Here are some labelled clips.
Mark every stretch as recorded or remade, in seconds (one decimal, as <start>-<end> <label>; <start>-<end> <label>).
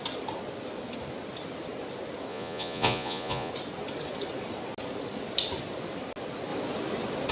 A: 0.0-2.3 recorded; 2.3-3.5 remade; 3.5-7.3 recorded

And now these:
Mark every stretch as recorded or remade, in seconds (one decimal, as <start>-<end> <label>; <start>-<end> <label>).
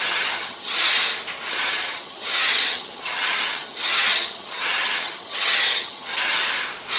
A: 0.0-0.9 remade; 0.9-1.5 recorded; 1.5-6.4 remade; 6.4-7.0 recorded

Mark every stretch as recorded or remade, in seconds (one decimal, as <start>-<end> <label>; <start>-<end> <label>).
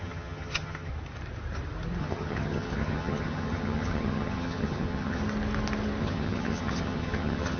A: 0.0-0.9 remade; 0.9-2.0 recorded; 2.0-5.2 remade; 5.2-6.0 recorded; 6.0-7.6 remade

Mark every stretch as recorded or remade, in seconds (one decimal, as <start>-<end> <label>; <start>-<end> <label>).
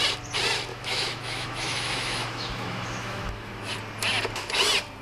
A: 0.0-0.7 recorded; 0.7-3.7 remade; 3.7-5.0 recorded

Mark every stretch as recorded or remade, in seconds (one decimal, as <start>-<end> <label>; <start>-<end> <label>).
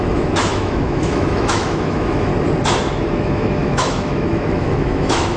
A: 0.0-2.3 remade; 2.3-2.9 recorded; 2.9-5.4 remade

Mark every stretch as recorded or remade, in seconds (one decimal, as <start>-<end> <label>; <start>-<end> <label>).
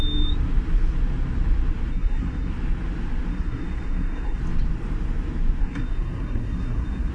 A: 0.0-1.9 recorded; 1.9-2.5 remade; 2.5-3.3 recorded; 3.3-4.4 remade; 4.4-5.6 recorded; 5.6-7.1 remade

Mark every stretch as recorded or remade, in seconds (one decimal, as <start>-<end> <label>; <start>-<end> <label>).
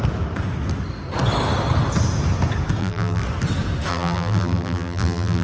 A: 0.0-2.8 recorded; 2.8-3.2 remade; 3.2-3.9 recorded; 3.9-5.4 remade